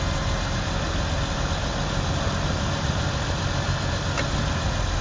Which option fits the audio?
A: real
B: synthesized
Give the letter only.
A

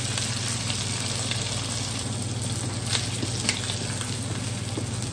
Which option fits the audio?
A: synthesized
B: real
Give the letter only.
B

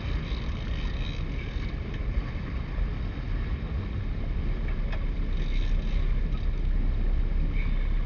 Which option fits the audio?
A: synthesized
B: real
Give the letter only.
B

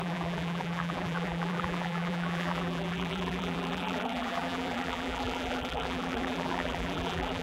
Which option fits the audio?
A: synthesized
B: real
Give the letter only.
A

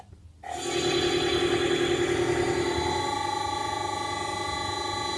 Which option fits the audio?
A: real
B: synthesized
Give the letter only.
A